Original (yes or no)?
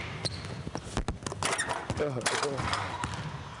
yes